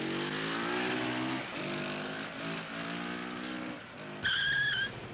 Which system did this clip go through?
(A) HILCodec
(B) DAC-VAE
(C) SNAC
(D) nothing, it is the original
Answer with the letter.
D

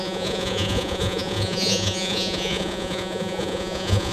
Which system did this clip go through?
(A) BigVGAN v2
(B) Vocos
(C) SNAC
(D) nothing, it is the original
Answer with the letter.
B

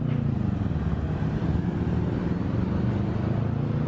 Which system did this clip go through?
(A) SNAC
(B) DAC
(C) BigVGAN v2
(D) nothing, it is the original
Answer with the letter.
D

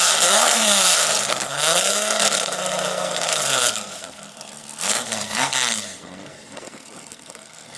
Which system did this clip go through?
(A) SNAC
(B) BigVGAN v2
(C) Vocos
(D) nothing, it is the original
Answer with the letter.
A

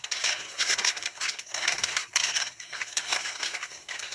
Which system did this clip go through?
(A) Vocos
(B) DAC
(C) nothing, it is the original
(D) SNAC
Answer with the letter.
D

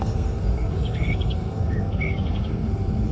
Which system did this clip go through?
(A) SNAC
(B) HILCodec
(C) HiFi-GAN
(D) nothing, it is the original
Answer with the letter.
A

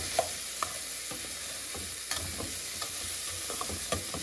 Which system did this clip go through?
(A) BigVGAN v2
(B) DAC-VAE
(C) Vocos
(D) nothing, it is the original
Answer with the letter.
D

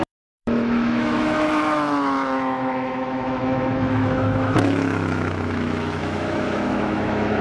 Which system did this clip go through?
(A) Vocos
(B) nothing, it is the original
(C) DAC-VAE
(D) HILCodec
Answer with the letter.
C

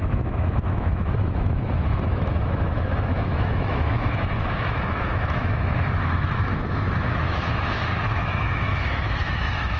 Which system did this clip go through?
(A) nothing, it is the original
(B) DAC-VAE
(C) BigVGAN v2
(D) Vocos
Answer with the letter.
B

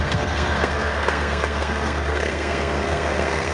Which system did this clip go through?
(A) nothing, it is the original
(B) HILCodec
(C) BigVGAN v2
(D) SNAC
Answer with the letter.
D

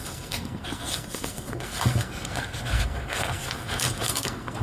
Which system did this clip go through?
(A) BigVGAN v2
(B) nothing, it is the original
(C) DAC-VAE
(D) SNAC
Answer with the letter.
D